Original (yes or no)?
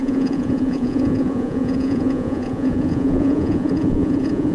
no